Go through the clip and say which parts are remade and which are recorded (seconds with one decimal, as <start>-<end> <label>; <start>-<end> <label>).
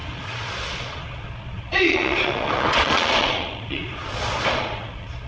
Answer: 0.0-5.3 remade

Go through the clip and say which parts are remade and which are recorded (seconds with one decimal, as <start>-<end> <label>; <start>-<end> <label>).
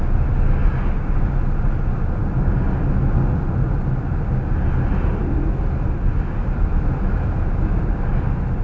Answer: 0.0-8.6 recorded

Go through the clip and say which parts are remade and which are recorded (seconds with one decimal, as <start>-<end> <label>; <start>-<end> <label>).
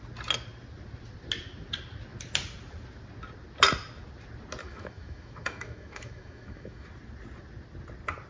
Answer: 0.0-4.6 recorded; 4.6-6.9 remade; 6.9-8.3 recorded